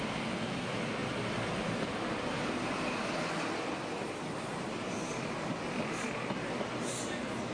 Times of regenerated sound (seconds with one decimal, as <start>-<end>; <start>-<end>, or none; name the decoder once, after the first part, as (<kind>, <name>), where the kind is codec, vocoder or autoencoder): none